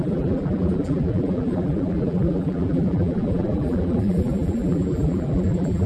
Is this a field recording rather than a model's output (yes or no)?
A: no